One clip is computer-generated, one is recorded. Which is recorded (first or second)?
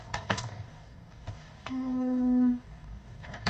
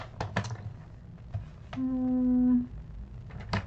second